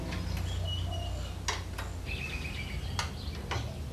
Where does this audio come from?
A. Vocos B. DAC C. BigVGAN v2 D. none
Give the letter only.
D